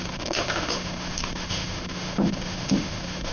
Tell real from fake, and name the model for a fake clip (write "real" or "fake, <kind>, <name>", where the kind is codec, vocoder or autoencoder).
fake, autoencoder, DAC-VAE